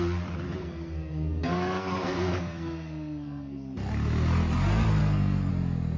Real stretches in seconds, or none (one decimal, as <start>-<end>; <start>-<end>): 0.0-0.6; 3.9-5.0; 5.5-6.0